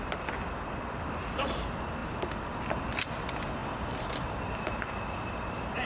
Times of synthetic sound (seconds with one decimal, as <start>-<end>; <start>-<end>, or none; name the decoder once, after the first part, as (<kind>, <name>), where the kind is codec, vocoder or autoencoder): none